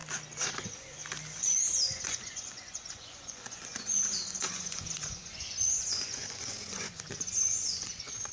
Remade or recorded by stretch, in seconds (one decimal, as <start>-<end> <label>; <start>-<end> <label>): 0.0-0.5 recorded; 0.5-1.0 remade; 1.0-1.9 recorded; 1.9-8.3 remade